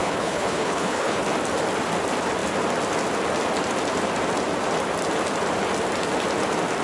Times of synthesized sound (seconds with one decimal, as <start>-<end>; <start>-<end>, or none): 0.0-1.2